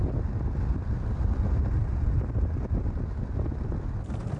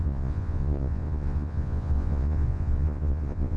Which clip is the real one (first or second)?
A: first